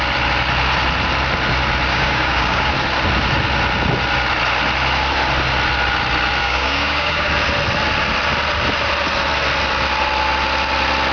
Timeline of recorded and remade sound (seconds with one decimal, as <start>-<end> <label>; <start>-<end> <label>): 0.0-1.9 recorded; 1.9-2.7 remade; 2.7-6.4 recorded; 6.4-7.3 remade; 7.3-11.1 recorded